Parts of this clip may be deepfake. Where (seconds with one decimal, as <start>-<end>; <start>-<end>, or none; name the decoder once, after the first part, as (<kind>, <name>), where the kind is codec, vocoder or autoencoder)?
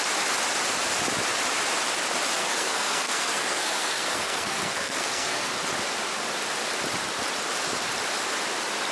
2.4-5.5 (codec, SNAC)